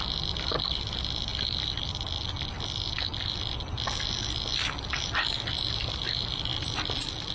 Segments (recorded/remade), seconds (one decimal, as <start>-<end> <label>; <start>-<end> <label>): 0.0-1.3 remade; 1.3-4.5 recorded; 4.5-6.5 remade; 6.5-7.3 recorded